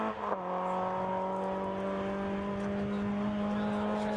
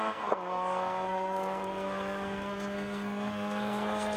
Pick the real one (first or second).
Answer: first